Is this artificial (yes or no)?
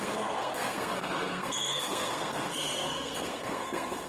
yes